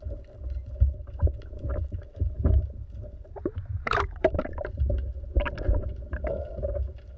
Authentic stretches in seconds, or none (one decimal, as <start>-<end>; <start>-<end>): 0.0-1.7; 4.5-7.2